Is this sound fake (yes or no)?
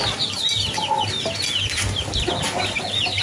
no